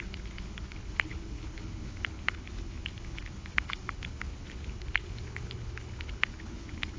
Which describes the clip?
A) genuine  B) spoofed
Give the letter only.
B